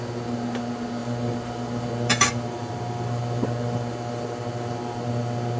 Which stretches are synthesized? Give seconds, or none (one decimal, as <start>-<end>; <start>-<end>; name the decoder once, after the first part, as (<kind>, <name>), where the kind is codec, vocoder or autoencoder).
1.0-4.4 (vocoder, BigVGAN v2)